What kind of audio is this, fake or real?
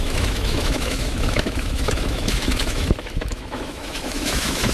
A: fake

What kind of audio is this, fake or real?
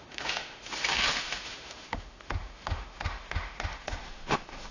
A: fake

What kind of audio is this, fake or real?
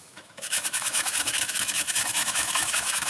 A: fake